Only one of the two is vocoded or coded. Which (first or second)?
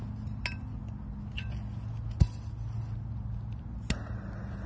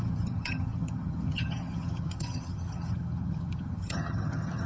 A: second